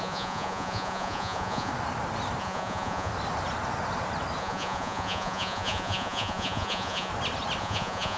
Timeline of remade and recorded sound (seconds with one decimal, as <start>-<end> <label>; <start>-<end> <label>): 0.0-1.7 remade; 1.7-2.4 recorded; 2.4-3.1 remade; 3.1-4.4 recorded; 4.4-7.1 remade; 7.1-7.6 recorded; 7.6-8.2 remade